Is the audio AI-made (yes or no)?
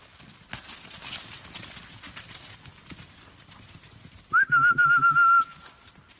no